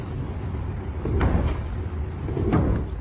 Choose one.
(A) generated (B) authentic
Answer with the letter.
B